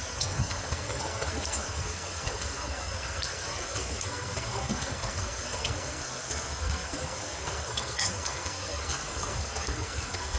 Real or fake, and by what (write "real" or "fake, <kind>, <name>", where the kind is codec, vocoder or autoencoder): fake, codec, SNAC